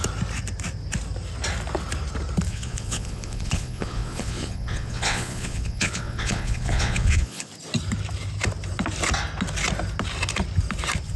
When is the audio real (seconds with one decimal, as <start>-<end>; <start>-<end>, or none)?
0.0-2.5; 7.5-11.2